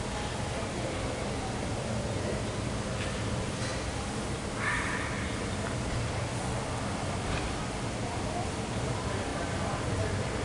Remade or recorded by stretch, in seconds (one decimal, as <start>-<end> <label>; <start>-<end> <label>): 0.0-10.4 recorded